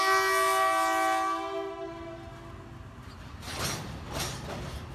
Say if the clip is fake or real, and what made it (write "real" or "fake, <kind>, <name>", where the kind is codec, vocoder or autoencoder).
real